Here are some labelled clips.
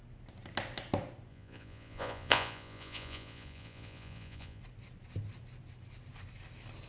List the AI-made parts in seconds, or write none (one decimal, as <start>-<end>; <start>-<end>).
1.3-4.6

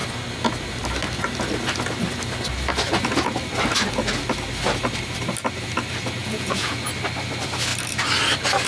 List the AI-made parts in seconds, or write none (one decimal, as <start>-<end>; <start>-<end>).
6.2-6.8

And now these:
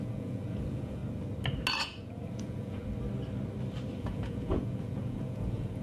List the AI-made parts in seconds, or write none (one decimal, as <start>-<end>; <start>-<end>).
0.0-1.0; 1.8-2.8; 4.0-5.8